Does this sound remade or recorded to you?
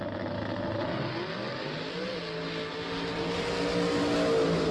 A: recorded